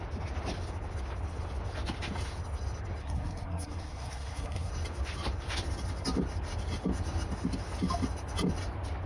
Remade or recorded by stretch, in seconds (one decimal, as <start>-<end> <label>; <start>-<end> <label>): 0.0-3.0 recorded; 3.0-4.7 remade; 4.7-9.1 recorded